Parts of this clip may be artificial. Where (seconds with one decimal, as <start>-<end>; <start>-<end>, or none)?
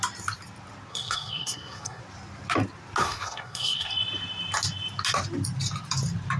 0.9-2.0; 3.0-3.9